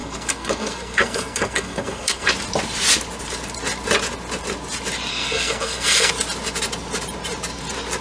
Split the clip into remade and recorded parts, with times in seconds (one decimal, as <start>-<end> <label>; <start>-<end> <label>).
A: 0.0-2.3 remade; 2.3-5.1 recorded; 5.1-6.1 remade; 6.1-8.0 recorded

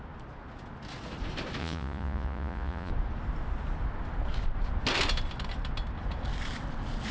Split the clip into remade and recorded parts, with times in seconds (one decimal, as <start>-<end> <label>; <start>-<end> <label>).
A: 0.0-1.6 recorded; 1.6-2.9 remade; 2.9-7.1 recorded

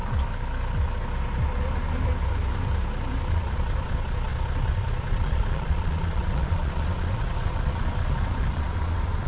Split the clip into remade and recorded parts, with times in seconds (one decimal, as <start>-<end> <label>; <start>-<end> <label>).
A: 0.0-3.1 recorded; 3.1-9.3 remade

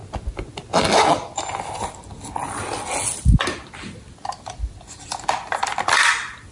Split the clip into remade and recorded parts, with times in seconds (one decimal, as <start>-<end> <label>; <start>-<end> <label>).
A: 0.0-3.9 recorded; 3.9-6.5 remade

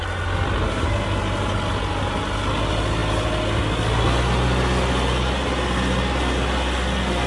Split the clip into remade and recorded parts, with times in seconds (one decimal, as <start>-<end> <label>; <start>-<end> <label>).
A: 0.0-7.3 recorded

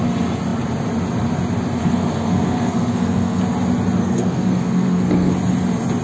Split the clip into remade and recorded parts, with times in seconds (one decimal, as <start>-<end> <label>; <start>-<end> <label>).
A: 0.0-1.8 recorded; 1.8-3.4 remade; 3.4-4.0 recorded; 4.0-5.3 remade; 5.3-6.0 recorded

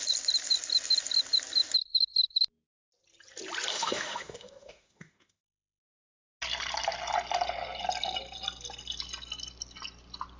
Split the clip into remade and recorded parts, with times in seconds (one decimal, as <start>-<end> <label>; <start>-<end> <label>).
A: 0.0-3.7 recorded; 3.7-5.8 remade; 5.8-10.4 recorded